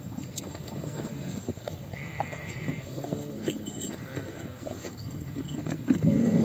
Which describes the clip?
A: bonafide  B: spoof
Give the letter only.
B